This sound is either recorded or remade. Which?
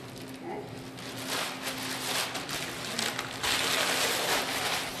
recorded